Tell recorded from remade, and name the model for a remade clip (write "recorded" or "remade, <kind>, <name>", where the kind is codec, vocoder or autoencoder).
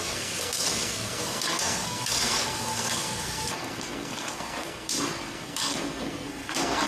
remade, codec, SNAC